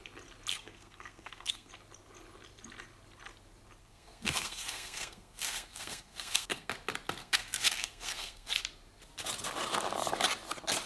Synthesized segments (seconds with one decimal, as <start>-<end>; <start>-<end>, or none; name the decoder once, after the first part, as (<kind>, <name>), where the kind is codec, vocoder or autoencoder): 0.5-1.7 (codec, SNAC); 3.8-6.7; 7.2-8.5